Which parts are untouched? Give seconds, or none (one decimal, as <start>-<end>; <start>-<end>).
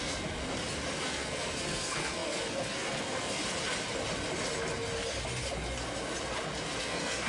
0.4-1.0; 3.4-6.8